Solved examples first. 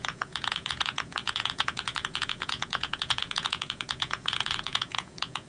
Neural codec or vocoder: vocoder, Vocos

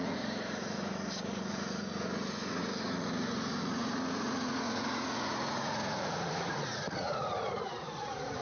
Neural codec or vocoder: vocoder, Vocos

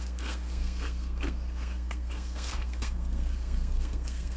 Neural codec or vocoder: codec, SNAC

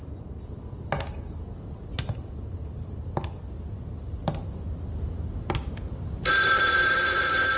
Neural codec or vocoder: none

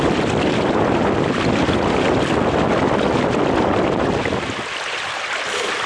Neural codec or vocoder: none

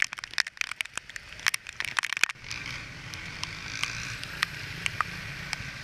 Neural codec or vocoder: none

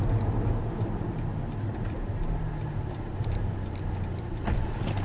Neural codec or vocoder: none